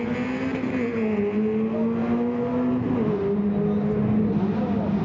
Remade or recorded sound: recorded